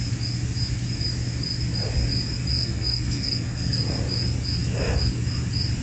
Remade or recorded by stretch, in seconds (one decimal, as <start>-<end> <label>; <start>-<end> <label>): 0.0-2.5 recorded; 2.5-3.8 remade; 3.8-5.8 recorded